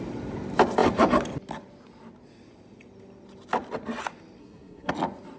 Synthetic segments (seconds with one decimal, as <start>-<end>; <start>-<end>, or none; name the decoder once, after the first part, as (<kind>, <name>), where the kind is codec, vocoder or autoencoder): 4.4-4.9 (codec, SNAC)

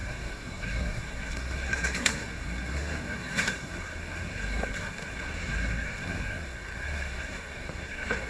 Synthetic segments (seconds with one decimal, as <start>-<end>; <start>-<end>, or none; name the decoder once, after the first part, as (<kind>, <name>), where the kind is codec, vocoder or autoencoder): 0.0-8.3 (codec, SNAC)

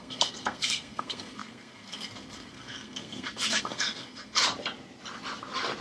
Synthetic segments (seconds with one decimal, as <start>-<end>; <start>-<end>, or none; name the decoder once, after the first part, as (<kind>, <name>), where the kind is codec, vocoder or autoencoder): 0.0-4.4 (codec, SNAC)

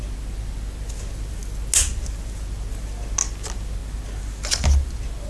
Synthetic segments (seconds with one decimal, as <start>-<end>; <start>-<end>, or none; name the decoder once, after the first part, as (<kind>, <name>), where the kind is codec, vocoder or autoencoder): none

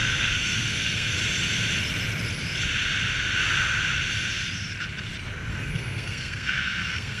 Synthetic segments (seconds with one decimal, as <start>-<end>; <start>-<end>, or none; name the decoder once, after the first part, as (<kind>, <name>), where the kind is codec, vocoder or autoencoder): 0.0-1.2 (codec, SNAC); 5.5-7.2

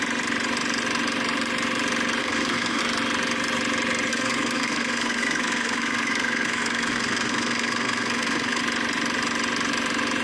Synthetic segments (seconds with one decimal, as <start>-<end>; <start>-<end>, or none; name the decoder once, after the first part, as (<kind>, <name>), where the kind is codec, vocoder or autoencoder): 2.2-2.8 (codec, SNAC); 4.1-8.6

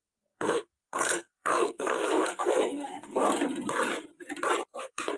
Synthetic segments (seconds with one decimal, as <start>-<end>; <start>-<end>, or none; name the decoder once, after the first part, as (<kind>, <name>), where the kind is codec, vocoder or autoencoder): 0.0-3.2 (codec, SNAC); 4.8-5.2

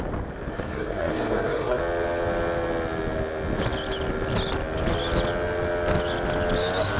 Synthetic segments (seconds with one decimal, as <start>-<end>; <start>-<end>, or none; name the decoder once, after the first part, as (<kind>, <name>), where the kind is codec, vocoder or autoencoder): 0.5-1.8 (codec, SNAC)